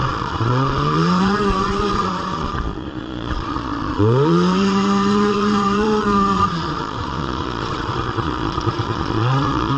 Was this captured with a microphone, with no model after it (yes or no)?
no